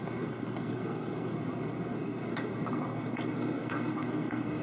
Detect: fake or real fake